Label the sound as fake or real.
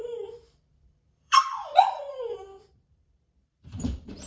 fake